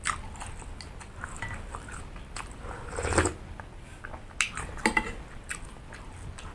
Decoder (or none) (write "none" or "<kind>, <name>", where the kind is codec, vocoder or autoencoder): none